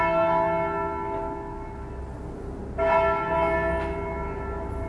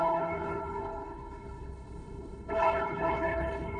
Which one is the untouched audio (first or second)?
first